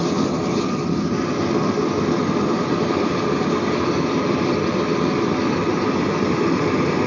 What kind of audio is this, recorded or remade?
recorded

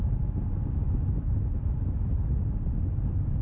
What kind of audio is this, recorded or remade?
recorded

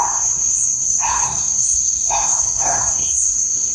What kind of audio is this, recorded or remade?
remade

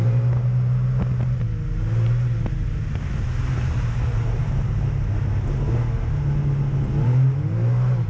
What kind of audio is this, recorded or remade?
recorded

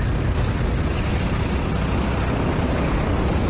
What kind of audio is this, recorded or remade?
recorded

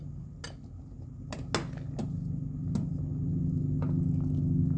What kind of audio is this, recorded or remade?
recorded